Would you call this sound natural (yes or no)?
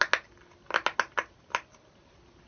yes